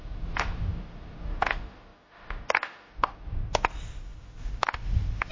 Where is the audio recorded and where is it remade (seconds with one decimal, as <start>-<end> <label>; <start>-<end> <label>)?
0.0-5.3 recorded